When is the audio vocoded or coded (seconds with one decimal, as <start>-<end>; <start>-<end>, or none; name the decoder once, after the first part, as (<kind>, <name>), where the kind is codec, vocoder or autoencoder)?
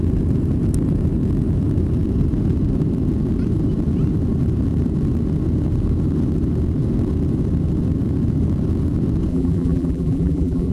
9.3-10.7 (vocoder, BigVGAN v2)